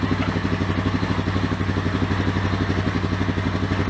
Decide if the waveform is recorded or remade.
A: recorded